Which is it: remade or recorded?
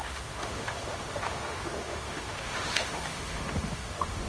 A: remade